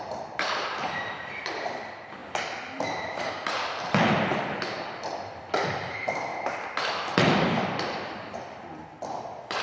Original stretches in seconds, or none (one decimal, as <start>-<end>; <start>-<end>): 2.2-5.2